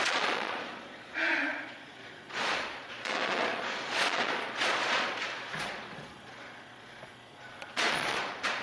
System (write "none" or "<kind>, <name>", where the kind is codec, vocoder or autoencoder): vocoder, Vocos